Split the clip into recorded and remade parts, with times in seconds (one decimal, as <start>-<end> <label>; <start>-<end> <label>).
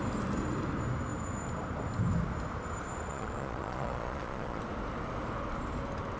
0.0-3.1 recorded; 3.1-4.6 remade; 4.6-6.2 recorded